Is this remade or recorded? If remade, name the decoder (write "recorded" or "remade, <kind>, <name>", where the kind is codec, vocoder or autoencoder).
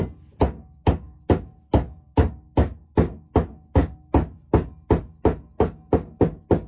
recorded